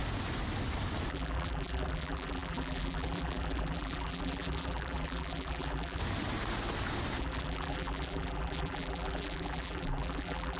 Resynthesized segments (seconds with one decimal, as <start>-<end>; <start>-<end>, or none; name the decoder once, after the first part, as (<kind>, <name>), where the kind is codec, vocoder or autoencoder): 1.1-6.0 (vocoder, BigVGAN v2); 7.2-10.6